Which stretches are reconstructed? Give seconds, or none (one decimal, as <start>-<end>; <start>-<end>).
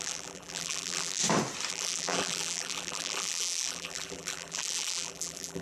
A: 0.0-1.2; 1.7-5.6